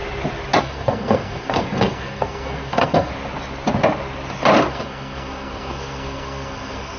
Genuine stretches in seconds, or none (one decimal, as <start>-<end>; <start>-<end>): 0.0-0.6; 3.1-4.7